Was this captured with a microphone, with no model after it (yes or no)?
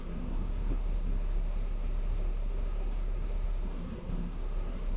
no